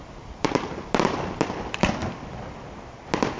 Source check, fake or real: real